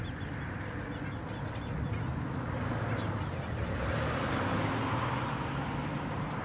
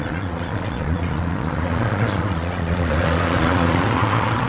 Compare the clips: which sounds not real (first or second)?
second